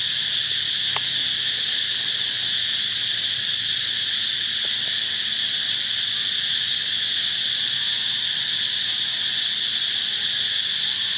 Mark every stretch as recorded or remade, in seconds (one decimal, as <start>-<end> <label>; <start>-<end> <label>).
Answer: 0.0-11.2 recorded